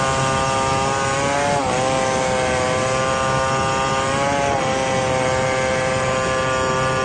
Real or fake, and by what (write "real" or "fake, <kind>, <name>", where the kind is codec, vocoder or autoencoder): real